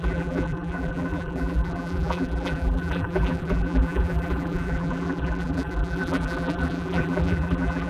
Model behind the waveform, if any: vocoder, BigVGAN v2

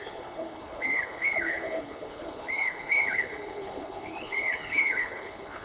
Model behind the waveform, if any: codec, HILCodec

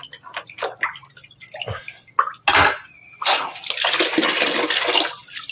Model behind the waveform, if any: none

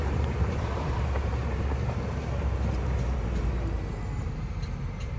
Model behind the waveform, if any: vocoder, BigVGAN v2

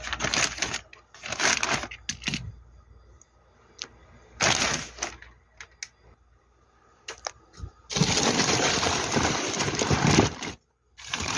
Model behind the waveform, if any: none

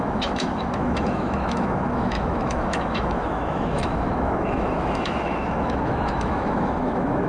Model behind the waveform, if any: autoencoder, DAC-VAE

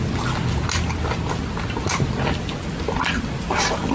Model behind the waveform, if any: none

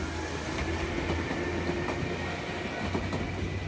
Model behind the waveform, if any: none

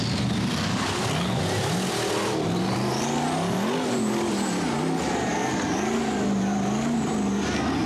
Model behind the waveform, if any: none